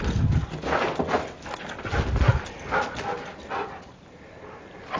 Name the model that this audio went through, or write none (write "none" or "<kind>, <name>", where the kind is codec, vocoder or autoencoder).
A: none